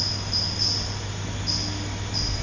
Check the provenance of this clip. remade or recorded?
recorded